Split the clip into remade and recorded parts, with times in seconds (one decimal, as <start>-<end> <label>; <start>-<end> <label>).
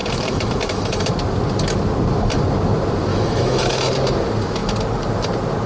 0.0-1.1 remade; 1.1-3.1 recorded; 3.1-3.9 remade; 3.9-5.7 recorded